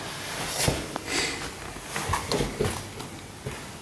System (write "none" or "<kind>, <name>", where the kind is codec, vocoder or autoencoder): none